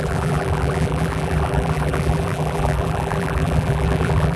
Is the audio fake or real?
fake